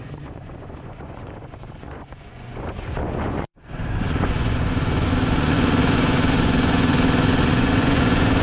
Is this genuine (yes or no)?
no